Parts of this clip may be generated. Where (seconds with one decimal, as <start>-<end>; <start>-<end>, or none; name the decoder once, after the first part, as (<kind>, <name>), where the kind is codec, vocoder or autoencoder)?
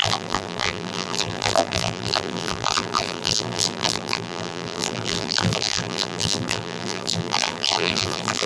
0.0-8.5 (vocoder, BigVGAN v2)